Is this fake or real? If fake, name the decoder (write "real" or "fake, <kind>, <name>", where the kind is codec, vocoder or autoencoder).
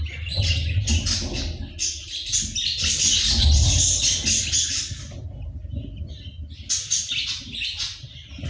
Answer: real